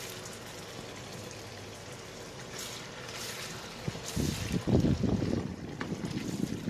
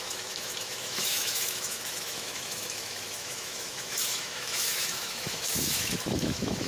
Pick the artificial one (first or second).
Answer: second